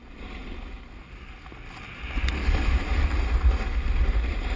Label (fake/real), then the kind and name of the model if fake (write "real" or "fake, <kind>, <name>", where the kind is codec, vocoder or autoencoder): real